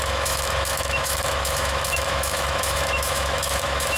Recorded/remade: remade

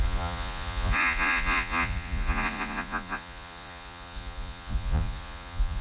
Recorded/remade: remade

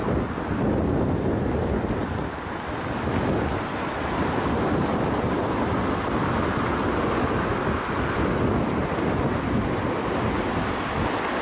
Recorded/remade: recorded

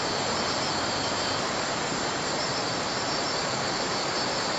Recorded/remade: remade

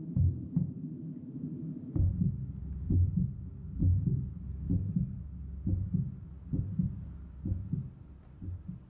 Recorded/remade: recorded